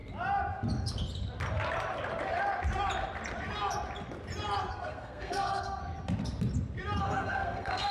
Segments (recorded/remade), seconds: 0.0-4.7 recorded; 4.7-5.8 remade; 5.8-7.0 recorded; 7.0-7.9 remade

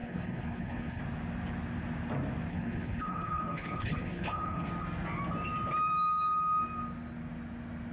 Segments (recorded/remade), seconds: 0.0-1.0 remade; 1.0-2.5 recorded; 2.5-4.7 remade; 4.7-7.9 recorded

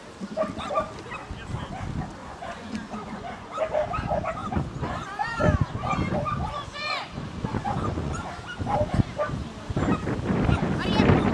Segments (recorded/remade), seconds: 0.0-2.2 recorded; 2.2-3.5 remade; 3.5-4.4 recorded; 4.4-8.3 remade; 8.3-11.3 recorded

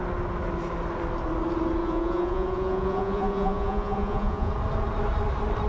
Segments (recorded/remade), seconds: 0.0-1.8 recorded; 1.8-4.5 remade; 4.5-5.7 recorded

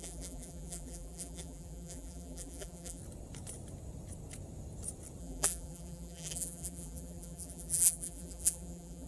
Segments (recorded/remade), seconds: 0.0-3.0 remade; 3.0-5.2 recorded; 5.2-9.1 remade

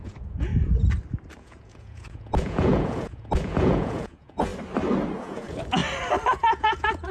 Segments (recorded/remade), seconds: 0.0-0.5 remade; 0.5-1.4 recorded; 1.4-4.5 remade; 4.5-5.2 recorded; 5.2-5.8 remade; 5.8-6.3 recorded; 6.3-7.1 remade

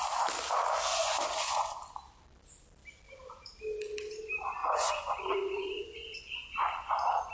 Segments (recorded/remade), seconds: 0.0-0.9 recorded; 0.9-1.6 remade; 1.6-4.6 recorded; 4.6-6.5 remade; 6.5-7.3 recorded